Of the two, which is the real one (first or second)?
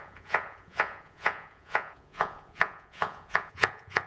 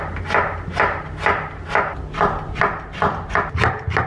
second